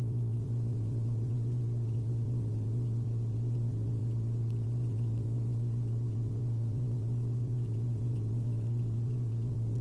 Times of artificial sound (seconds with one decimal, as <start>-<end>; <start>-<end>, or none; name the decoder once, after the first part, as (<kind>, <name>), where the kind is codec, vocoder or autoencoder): 0.0-9.8 (vocoder, WaveNeXt)